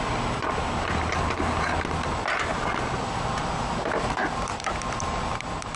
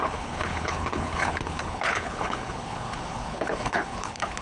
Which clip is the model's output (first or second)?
second